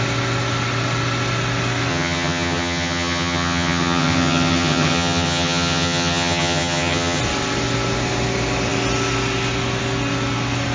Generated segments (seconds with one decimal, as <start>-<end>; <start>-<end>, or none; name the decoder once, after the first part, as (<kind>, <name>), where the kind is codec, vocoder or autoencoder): 1.9-7.2 (vocoder, HiFi-GAN)